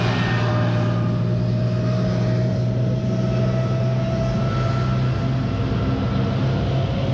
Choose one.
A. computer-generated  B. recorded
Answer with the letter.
B